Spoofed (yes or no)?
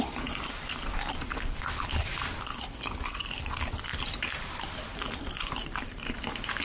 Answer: no